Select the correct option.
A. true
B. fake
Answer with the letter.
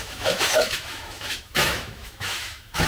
B